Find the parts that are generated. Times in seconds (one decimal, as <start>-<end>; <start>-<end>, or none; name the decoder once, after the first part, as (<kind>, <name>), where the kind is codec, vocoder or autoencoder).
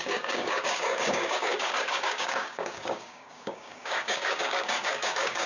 0.0-5.5 (codec, DAC)